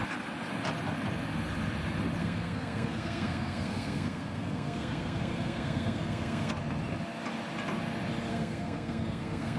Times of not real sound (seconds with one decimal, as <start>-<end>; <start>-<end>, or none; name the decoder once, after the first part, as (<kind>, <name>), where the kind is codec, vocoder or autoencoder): 2.2-6.5 (codec, SNAC); 8.3-9.6